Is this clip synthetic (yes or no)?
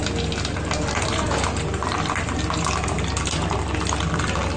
no